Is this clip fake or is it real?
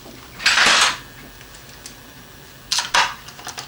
real